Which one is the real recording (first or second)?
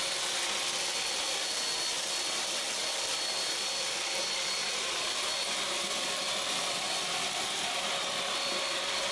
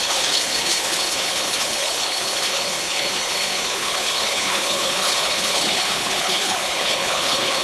first